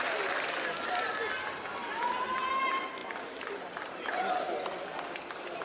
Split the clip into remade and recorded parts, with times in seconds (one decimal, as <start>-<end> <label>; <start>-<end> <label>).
0.0-1.8 recorded; 1.8-2.5 remade; 2.5-3.0 recorded; 3.0-4.0 remade; 4.0-5.6 recorded